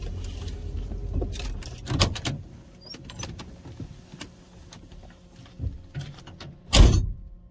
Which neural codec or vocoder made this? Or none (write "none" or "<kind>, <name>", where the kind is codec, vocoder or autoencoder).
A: none